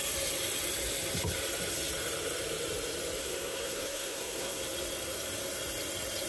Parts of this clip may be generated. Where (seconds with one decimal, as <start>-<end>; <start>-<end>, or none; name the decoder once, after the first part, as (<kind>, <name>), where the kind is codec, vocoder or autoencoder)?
3.2-4.6 (codec, SNAC)